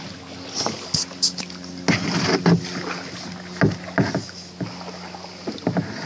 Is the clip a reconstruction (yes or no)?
no